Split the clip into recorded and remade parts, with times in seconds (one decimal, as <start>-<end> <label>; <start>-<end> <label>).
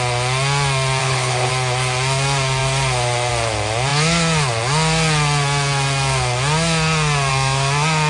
0.0-1.0 recorded; 1.0-1.5 remade; 1.5-8.1 recorded